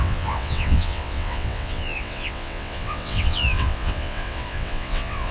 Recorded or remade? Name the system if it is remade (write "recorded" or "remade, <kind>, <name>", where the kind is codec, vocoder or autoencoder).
remade, vocoder, WaveNeXt